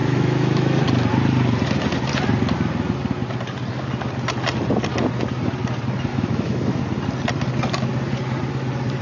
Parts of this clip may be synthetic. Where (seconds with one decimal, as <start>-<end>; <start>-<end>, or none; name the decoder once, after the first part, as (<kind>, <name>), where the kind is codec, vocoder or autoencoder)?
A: 0.0-0.8 (autoencoder, DAC-VAE); 6.1-6.8